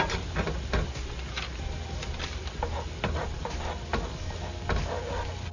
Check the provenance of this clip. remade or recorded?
recorded